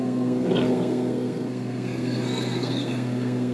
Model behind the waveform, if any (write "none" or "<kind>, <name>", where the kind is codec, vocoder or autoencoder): codec, SNAC